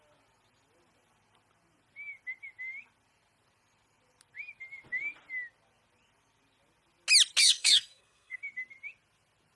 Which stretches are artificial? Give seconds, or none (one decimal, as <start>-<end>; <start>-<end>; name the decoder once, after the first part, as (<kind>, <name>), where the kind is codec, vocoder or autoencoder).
7.4-8.4 (codec, SNAC)